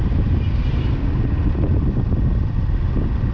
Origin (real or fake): real